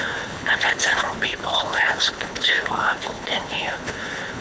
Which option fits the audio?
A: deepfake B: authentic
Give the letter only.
A